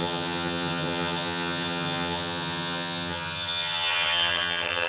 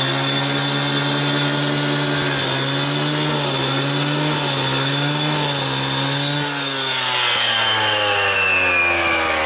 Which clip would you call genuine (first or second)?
second